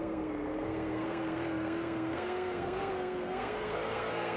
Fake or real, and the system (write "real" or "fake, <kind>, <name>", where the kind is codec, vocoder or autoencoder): fake, codec, SNAC